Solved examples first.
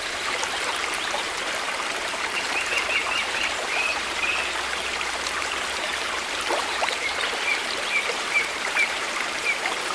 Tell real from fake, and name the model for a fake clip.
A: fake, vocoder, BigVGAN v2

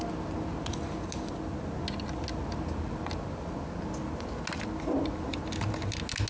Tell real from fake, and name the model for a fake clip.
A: real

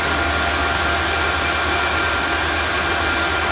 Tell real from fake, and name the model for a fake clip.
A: real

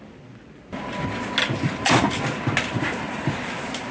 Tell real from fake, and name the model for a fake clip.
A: real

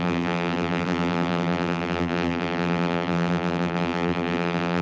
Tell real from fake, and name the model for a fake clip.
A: fake, vocoder, BigVGAN v2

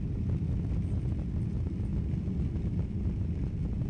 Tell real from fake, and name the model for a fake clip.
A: real